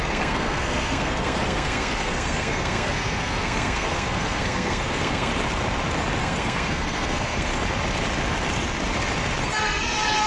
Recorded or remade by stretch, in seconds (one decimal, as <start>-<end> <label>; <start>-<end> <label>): 0.0-5.3 remade; 5.3-6.2 recorded; 6.2-7.5 remade; 7.5-9.4 recorded; 9.4-10.3 remade